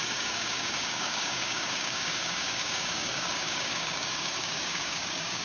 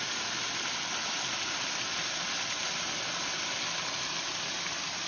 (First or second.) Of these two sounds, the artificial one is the first